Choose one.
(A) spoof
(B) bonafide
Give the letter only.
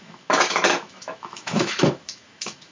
A